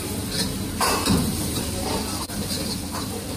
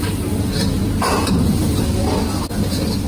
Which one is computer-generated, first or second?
first